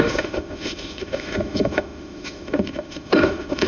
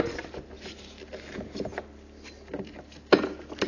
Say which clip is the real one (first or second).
second